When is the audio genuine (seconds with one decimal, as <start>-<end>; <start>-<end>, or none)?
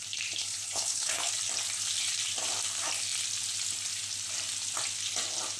0.0-0.4; 1.3-5.6